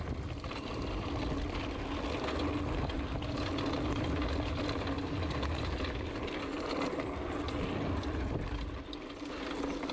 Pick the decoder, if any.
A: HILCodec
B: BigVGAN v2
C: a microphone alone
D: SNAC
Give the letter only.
C